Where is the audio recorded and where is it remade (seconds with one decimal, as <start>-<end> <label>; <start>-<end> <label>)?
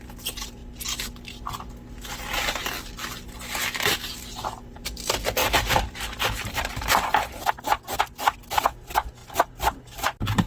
0.0-5.4 recorded; 5.4-7.5 remade; 7.5-10.5 recorded